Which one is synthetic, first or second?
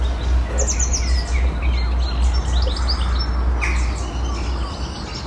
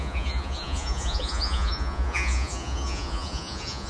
second